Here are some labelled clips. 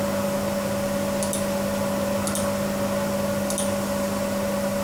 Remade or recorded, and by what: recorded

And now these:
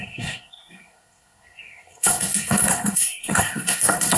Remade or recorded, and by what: remade, codec, SNAC